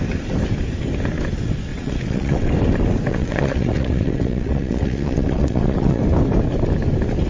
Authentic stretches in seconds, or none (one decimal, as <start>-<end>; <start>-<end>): 0.0-1.7; 2.5-3.1; 6.0-7.3